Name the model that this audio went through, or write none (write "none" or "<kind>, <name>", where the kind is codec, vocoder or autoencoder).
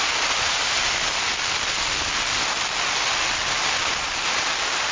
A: none